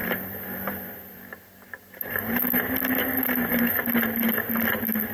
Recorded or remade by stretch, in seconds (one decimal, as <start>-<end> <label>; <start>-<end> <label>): 0.0-2.6 remade; 2.6-3.0 recorded; 3.0-3.6 remade; 3.6-5.1 recorded